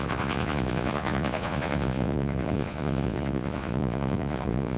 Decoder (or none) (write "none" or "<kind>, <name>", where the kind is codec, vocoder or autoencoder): vocoder, Vocos